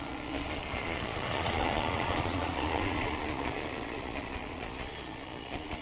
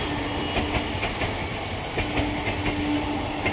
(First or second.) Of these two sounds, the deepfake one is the first